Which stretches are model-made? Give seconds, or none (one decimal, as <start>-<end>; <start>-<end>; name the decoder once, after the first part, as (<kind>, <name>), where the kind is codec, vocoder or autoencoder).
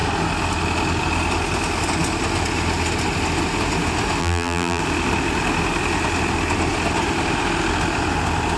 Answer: 4.2-4.8 (vocoder, BigVGAN v2)